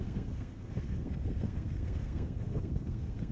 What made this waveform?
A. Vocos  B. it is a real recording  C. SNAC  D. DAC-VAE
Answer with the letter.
C